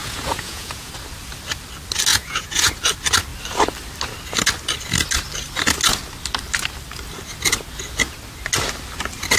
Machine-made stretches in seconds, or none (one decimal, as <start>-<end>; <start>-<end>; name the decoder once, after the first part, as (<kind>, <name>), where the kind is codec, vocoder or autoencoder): 0.0-0.9 (vocoder, Vocos); 2.1-2.7